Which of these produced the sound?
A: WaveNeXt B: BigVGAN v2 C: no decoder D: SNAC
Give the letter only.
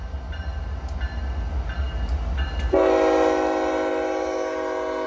C